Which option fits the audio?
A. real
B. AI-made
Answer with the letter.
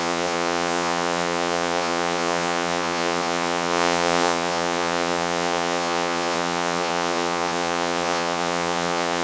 B